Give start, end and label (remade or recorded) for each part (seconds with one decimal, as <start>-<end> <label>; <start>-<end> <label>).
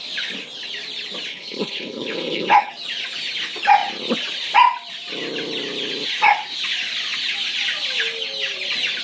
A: 0.0-1.3 recorded; 1.3-2.7 remade; 2.7-9.0 recorded